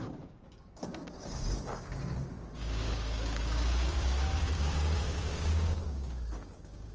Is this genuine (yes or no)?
no